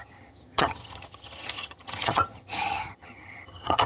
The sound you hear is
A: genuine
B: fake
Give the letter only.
B